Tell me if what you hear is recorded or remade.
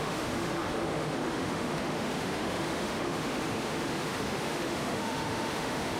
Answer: remade